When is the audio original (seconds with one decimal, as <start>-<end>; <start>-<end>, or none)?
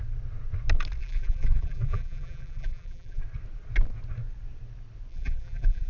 0.0-1.0; 3.2-5.1